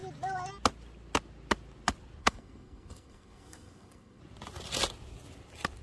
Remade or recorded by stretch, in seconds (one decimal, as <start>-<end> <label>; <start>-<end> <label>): 0.0-2.2 recorded; 2.2-4.2 remade; 4.2-5.8 recorded